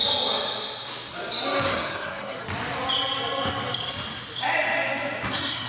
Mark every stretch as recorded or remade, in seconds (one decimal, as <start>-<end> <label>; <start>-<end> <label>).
0.0-1.7 recorded; 1.7-2.4 remade; 2.4-5.3 recorded; 5.3-5.7 remade

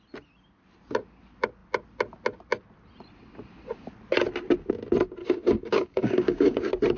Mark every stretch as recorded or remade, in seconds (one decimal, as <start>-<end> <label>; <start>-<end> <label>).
0.0-5.2 recorded; 5.2-6.6 remade; 6.6-7.0 recorded